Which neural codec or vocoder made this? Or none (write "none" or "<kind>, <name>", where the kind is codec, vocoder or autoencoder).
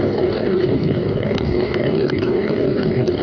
codec, DAC